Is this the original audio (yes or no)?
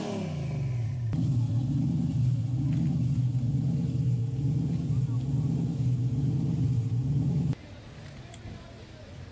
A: yes